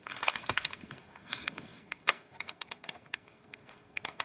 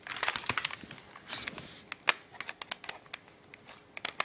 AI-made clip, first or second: first